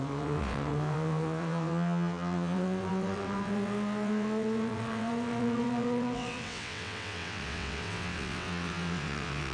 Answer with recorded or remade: remade